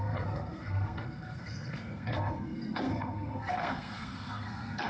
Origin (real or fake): fake